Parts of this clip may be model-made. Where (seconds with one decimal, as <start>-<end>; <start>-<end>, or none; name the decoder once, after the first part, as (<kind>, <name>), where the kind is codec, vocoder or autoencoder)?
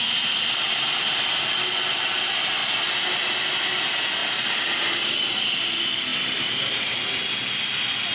4.2-5.3 (vocoder, BigVGAN v2)